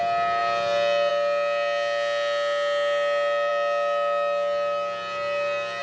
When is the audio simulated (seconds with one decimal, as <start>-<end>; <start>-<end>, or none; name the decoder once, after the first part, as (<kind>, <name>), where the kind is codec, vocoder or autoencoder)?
none